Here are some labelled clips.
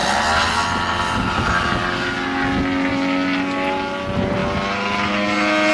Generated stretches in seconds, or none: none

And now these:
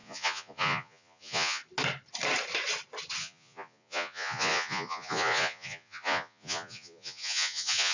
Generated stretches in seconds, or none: 0.0-1.6 (vocoder, Vocos); 3.2-7.9

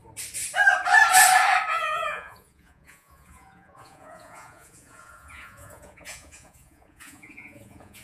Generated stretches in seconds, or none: 1.7-8.0 (vocoder, Vocos)

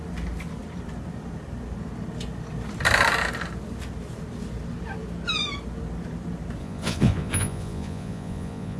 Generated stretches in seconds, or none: 6.6-8.8 (vocoder, Vocos)

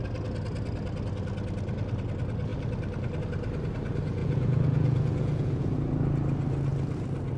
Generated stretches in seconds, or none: 4.2-5.8 (vocoder, Vocos)

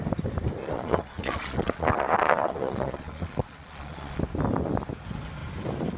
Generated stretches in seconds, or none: 0.6-4.2 (vocoder, Vocos)

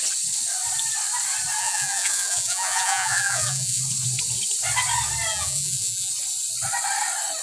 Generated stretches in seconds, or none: 1.6-3.8 (vocoder, Vocos); 5.3-6.1

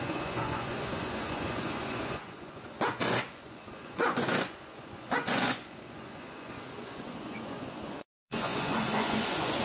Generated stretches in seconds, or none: 0.0-9.6 (vocoder, Vocos)